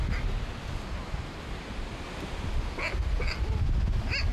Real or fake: real